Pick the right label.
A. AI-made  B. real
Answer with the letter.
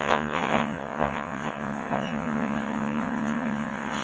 A